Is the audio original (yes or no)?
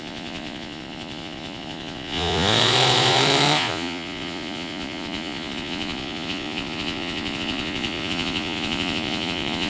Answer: no